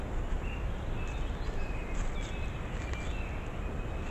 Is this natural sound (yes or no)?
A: yes